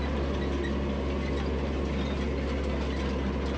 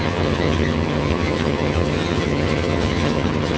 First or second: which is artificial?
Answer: second